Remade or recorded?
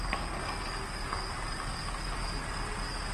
recorded